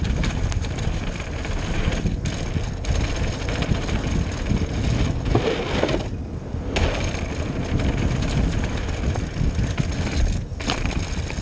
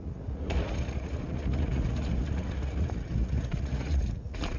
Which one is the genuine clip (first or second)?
first